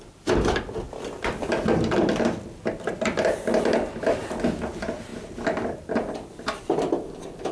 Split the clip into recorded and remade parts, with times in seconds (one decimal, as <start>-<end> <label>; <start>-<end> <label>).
0.0-7.5 recorded